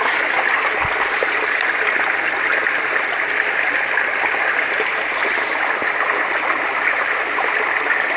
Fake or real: real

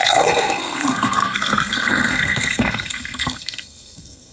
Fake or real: fake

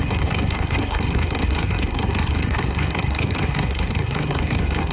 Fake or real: fake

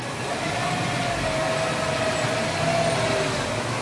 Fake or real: real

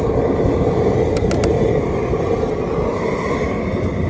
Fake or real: real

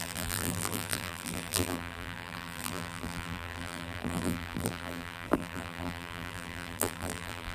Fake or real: fake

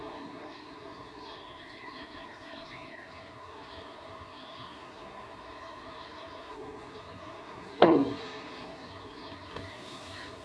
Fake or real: fake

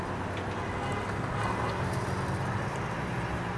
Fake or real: real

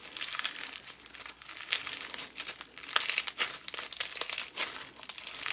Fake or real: real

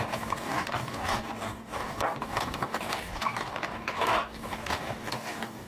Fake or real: fake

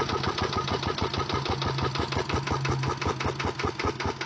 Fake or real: real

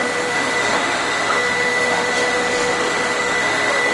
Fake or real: fake